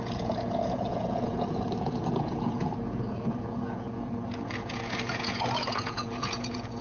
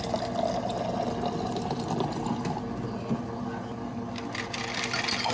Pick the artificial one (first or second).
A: first